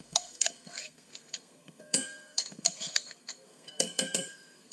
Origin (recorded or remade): remade